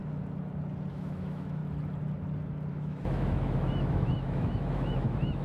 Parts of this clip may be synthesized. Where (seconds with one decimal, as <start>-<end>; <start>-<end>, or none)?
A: 0.9-1.6; 2.7-5.4